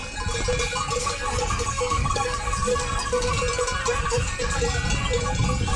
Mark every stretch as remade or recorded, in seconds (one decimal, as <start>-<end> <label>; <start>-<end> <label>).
0.0-1.0 recorded; 1.0-3.4 remade; 3.4-3.8 recorded; 3.8-4.6 remade; 4.6-5.8 recorded